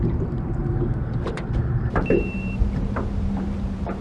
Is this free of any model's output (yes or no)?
no